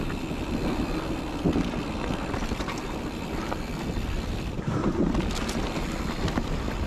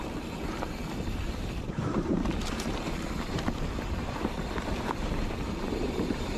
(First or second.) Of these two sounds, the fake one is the second